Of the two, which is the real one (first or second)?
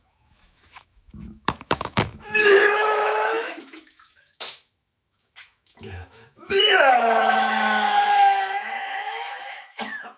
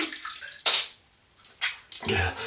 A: second